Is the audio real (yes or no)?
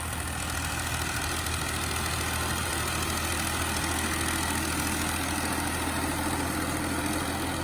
yes